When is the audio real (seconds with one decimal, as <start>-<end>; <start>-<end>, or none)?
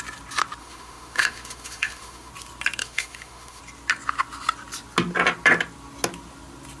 0.0-0.6; 2.3-2.8; 3.6-6.8